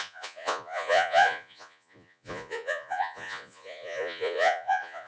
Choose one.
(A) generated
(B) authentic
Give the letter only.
A